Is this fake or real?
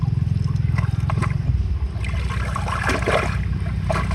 real